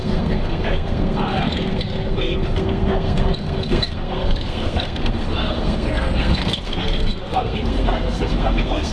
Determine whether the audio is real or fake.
fake